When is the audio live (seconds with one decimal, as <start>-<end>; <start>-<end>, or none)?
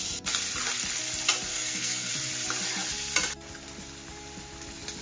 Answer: 0.0-1.5; 2.1-5.0